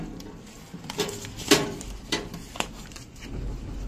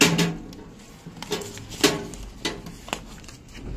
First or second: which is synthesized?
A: first